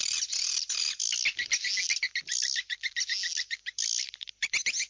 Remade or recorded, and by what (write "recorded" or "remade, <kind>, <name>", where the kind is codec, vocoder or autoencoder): recorded